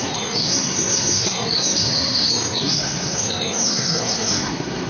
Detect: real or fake fake